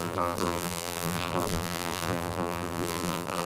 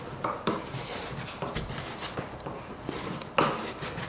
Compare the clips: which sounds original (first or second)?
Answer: second